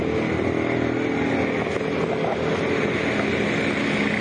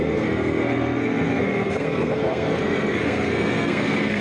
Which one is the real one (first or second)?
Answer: first